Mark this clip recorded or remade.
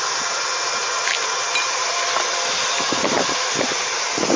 recorded